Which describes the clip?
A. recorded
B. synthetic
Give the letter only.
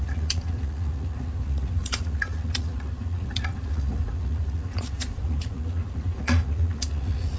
B